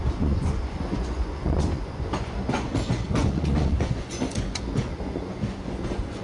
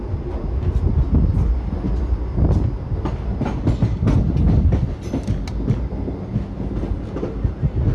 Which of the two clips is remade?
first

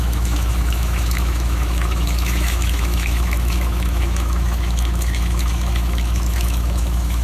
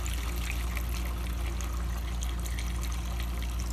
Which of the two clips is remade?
first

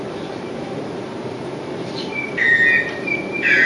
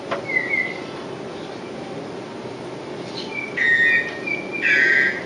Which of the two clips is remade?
first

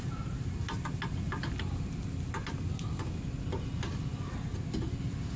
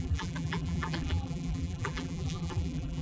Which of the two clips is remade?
second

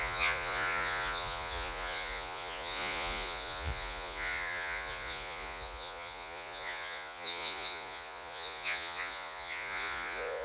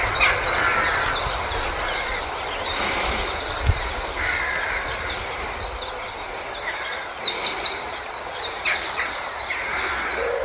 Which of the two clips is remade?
first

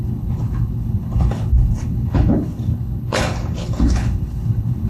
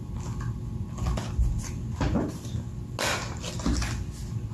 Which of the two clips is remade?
first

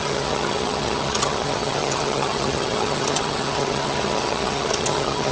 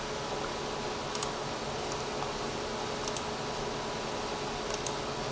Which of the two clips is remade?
first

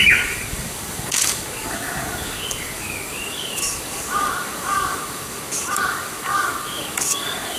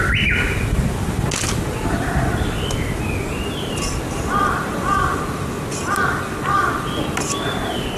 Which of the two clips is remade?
first